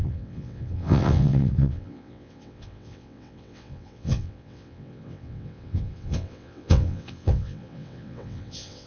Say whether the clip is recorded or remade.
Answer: remade